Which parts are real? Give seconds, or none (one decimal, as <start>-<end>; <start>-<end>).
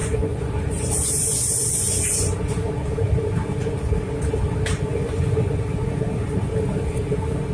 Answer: 2.7-4.9; 5.5-7.5